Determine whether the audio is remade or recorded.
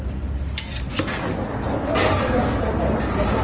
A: recorded